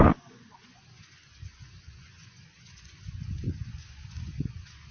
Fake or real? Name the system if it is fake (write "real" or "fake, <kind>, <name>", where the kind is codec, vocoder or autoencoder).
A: fake, vocoder, Vocos